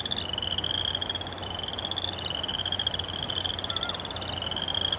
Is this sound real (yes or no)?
yes